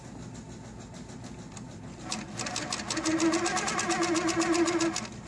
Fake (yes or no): no